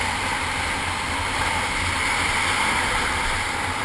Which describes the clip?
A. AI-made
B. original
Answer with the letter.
B